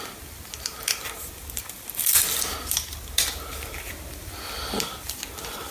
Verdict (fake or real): real